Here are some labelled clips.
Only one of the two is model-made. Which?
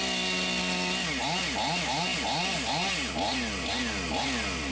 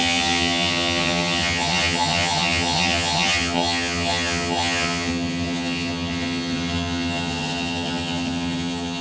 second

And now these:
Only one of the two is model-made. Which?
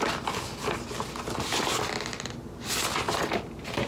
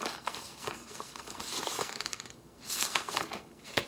second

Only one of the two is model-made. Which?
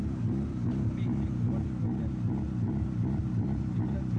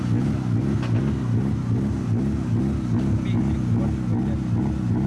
first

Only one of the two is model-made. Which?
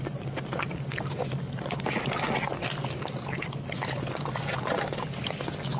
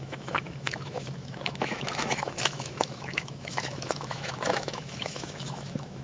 second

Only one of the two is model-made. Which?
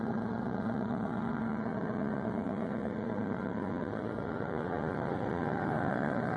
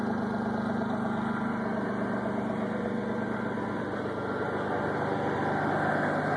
first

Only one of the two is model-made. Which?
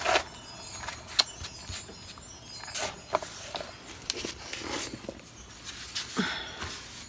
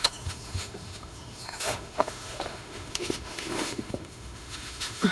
second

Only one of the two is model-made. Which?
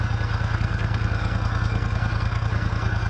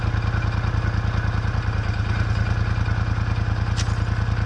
first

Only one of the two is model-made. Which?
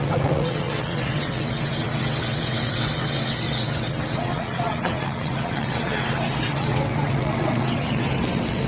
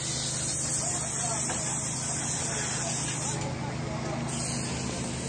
first